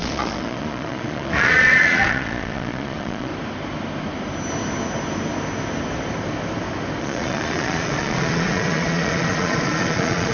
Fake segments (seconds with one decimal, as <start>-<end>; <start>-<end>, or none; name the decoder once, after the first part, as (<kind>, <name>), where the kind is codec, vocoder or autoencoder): 0.0-3.3 (vocoder, Vocos); 7.0-10.3